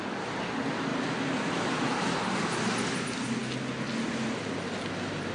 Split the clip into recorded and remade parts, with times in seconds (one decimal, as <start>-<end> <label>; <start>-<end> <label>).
0.0-5.3 recorded